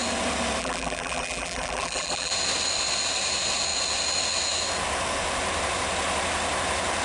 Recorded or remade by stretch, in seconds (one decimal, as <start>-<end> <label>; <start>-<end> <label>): 0.0-0.6 recorded; 0.6-2.3 remade; 2.3-7.0 recorded

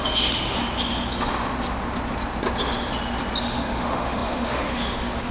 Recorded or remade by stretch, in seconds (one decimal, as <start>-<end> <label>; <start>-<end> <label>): 0.0-0.6 remade; 0.6-3.4 recorded; 3.4-5.3 remade